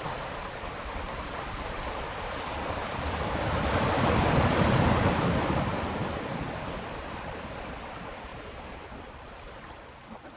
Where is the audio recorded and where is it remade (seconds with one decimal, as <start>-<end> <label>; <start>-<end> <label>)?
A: 0.0-10.4 recorded